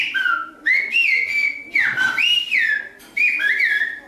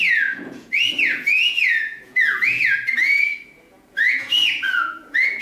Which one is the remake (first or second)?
second